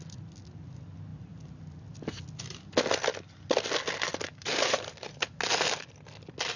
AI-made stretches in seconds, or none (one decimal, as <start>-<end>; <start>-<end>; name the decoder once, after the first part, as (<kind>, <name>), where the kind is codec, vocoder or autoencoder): 4.1-5.4 (vocoder, BigVGAN v2)